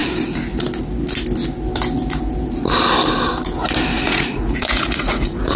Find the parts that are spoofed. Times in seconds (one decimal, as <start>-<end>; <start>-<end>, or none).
3.9-5.6